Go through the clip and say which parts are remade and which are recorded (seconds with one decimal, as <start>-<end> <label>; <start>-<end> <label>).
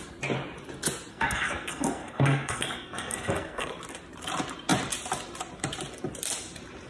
0.0-1.1 recorded; 1.1-3.7 remade; 3.7-6.9 recorded